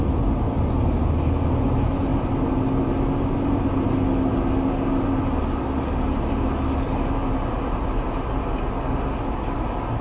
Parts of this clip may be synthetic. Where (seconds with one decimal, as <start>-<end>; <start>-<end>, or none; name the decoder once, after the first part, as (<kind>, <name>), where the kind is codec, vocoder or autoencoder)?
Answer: none